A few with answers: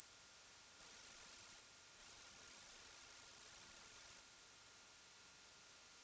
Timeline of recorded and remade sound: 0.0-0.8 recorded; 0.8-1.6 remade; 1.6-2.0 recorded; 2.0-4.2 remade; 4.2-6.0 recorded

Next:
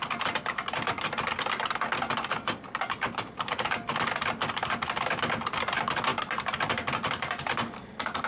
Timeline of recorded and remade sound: 0.0-8.3 recorded

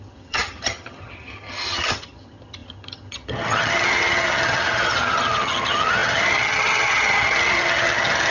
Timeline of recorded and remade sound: 0.0-8.3 remade

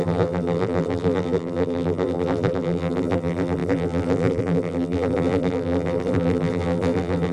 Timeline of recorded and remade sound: 0.0-7.3 remade

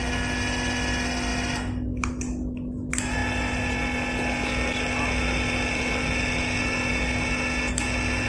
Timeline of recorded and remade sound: 0.0-8.3 recorded

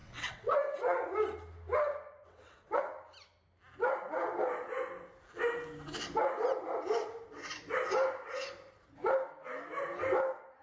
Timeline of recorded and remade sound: 0.0-1.1 remade; 1.1-2.2 recorded; 2.2-2.9 remade; 2.9-10.6 recorded

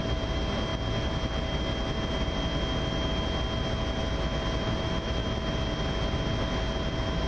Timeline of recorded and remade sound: 0.0-7.3 recorded